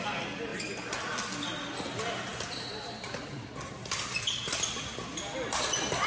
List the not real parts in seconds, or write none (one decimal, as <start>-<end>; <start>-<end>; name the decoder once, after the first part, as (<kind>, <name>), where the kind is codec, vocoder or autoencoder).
none